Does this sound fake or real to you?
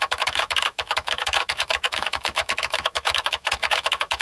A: fake